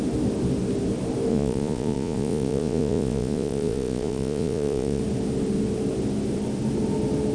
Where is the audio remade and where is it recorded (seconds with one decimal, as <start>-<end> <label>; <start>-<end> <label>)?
0.0-1.3 recorded; 1.3-5.0 remade; 5.0-7.3 recorded